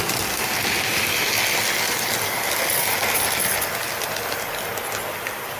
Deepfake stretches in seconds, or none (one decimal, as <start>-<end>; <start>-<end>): none